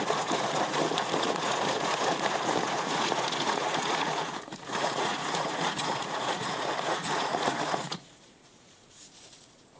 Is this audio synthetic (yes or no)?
yes